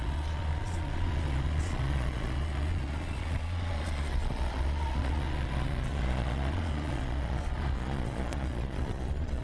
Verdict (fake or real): fake